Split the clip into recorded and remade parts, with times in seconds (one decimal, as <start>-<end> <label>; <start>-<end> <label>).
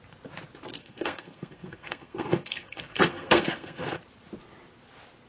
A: 0.0-0.8 recorded; 0.8-4.0 remade; 4.0-5.3 recorded